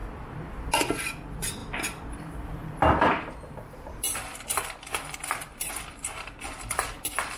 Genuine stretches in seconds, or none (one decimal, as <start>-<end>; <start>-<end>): none